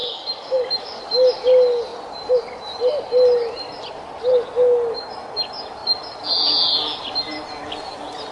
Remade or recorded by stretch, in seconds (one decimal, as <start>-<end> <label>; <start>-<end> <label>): 0.0-1.0 remade; 1.0-8.3 recorded